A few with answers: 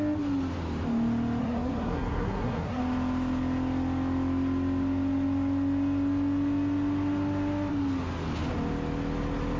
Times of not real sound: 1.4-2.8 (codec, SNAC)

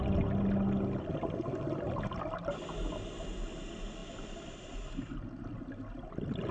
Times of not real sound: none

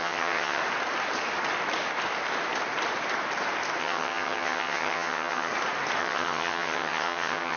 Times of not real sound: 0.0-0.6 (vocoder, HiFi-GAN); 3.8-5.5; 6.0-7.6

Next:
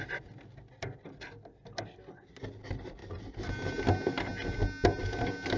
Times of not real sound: none